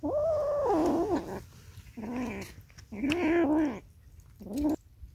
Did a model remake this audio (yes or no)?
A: no